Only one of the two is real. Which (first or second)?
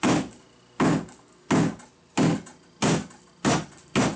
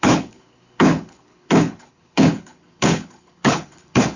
first